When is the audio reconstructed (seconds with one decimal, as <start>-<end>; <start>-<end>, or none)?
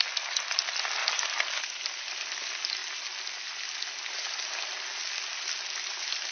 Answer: 0.0-1.0; 1.6-2.8